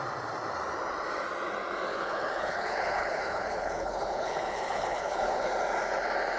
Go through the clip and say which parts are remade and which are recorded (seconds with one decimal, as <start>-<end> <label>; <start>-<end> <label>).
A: 0.0-1.9 recorded; 1.9-5.5 remade; 5.5-6.4 recorded